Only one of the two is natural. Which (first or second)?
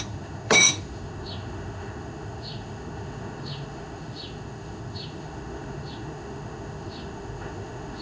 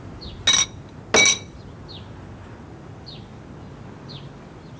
second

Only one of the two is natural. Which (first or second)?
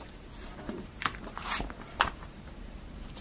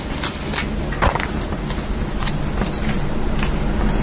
second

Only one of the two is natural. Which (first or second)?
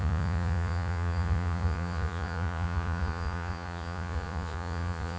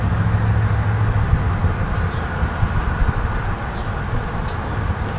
second